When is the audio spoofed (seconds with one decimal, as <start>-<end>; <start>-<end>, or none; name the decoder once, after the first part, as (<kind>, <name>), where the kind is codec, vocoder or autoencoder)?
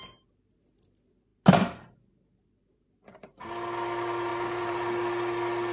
4.3-4.9 (vocoder, BigVGAN v2)